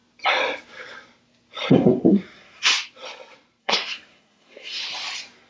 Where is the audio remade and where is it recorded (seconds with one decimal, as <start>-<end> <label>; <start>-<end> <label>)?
0.0-1.7 recorded; 1.7-2.7 remade; 2.7-3.6 recorded; 3.6-4.8 remade; 4.8-5.5 recorded